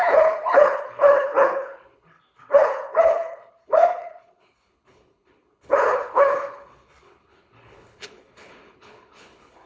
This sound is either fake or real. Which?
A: fake